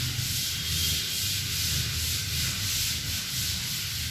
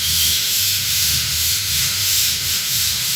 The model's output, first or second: second